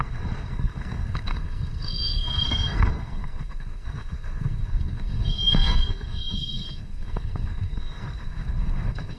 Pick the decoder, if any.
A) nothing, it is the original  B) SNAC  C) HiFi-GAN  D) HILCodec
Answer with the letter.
B